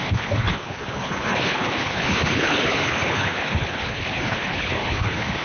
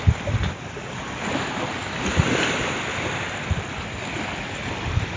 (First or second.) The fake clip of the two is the first